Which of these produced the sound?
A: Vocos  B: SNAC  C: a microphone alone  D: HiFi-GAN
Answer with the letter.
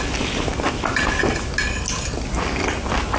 C